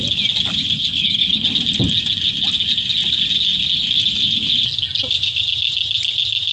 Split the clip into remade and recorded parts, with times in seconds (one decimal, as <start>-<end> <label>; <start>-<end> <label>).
0.0-0.8 recorded; 0.8-1.5 remade; 1.5-6.5 recorded